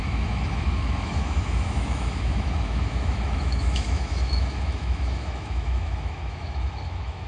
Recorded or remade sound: remade